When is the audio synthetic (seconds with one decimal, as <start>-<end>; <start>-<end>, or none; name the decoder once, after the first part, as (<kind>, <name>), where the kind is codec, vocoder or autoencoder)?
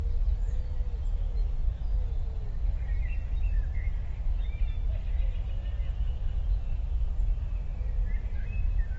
none